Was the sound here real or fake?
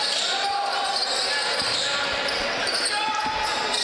real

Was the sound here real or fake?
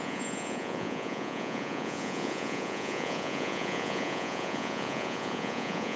fake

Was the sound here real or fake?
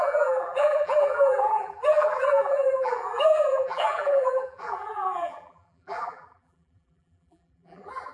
fake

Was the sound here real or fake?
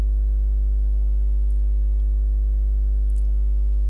real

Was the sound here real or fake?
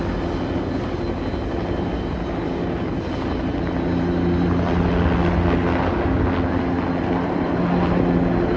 real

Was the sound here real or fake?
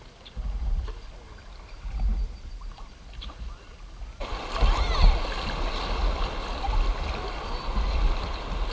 real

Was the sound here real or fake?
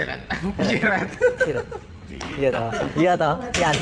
fake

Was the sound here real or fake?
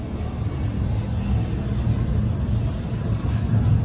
real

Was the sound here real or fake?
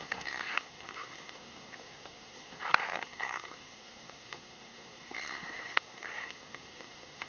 fake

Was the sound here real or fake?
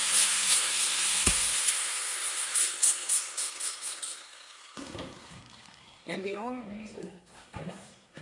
fake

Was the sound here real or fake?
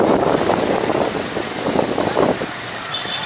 real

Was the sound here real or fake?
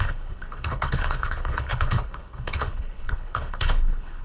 fake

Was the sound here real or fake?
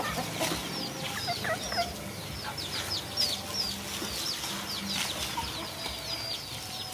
real